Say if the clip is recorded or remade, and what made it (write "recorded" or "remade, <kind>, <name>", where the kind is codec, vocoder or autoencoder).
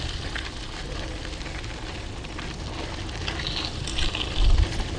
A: recorded